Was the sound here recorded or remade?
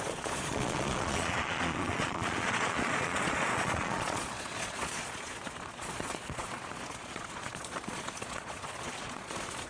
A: remade